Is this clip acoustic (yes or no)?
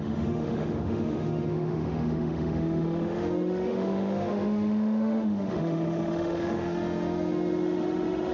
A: no